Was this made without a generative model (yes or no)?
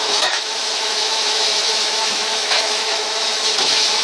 no